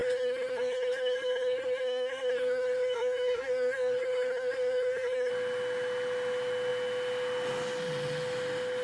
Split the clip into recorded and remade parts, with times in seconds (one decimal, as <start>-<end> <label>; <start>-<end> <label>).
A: 0.0-5.3 remade; 5.3-8.8 recorded